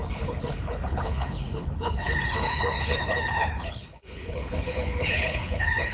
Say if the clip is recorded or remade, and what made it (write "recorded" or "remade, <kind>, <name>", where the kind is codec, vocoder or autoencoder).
remade, codec, HILCodec